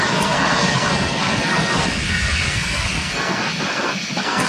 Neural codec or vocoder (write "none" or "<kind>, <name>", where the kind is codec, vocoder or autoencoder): codec, SNAC